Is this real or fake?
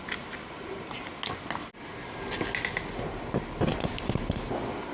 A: real